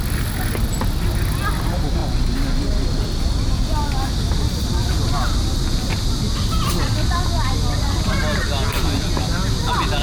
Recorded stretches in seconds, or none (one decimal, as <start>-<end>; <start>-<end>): 0.0-10.0